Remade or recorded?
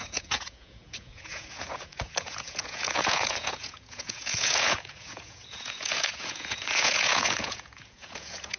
remade